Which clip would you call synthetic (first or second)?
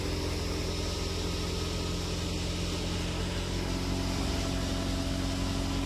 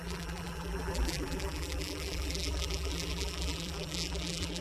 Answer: second